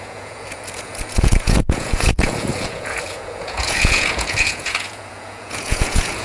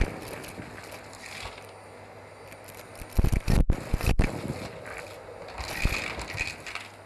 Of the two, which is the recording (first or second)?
second